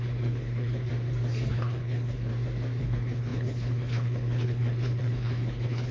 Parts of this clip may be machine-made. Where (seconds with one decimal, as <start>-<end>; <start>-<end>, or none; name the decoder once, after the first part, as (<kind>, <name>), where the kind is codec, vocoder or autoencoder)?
0.0-0.9 (codec, HILCodec); 1.5-2.3; 2.8-5.9